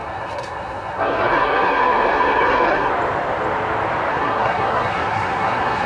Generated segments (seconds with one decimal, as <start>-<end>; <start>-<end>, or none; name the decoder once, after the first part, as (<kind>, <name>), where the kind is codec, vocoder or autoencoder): 0.0-2.9 (codec, SNAC); 4.1-5.9